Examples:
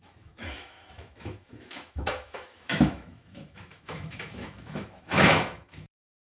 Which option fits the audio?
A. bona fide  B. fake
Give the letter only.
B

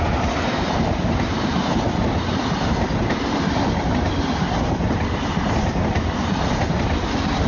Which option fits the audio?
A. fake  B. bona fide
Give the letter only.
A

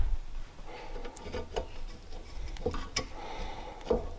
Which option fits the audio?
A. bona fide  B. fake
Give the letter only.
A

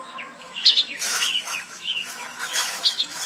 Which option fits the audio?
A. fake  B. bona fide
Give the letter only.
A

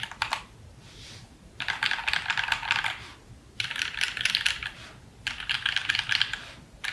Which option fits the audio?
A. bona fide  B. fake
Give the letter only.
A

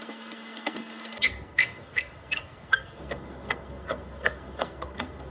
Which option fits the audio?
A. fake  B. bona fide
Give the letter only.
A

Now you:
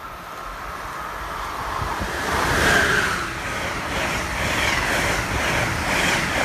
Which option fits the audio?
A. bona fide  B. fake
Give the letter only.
A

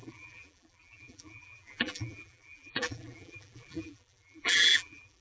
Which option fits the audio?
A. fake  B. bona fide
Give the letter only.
A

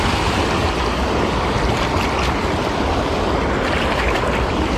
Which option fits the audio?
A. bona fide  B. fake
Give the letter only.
A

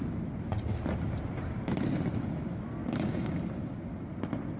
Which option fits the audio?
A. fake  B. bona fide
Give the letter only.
B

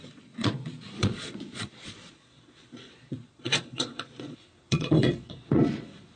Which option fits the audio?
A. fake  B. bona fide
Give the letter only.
A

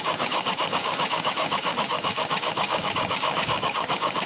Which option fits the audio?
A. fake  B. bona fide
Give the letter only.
A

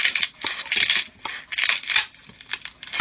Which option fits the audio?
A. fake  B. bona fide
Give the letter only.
B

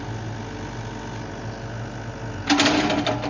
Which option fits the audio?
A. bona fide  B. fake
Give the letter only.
A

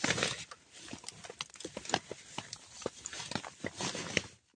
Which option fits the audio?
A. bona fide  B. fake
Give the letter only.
A